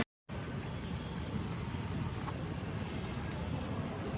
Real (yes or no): yes